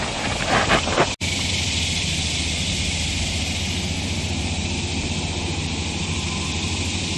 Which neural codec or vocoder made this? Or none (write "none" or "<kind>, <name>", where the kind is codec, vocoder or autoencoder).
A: none